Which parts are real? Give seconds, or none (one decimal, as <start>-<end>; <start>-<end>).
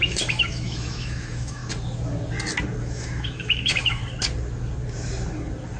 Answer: 1.6-2.8; 4.0-5.8